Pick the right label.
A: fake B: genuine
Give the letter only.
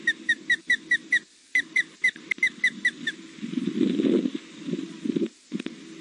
B